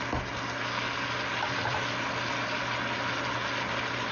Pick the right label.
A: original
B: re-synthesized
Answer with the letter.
A